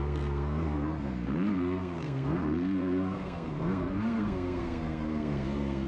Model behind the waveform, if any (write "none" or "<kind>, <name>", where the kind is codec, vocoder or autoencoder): codec, SNAC